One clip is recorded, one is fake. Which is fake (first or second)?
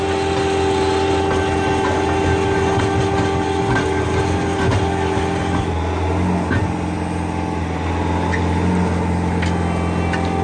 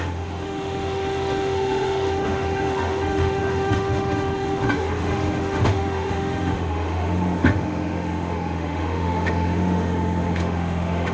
second